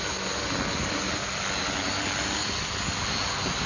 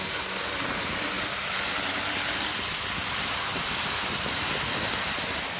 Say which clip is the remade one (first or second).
second